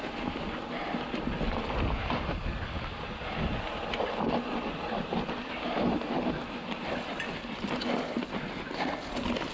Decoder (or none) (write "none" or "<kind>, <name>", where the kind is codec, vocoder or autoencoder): none